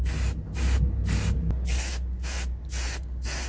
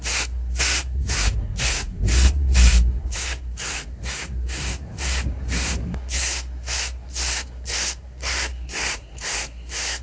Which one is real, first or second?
first